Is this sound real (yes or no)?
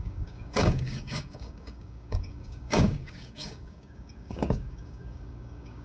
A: no